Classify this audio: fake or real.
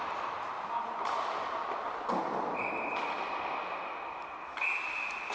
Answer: real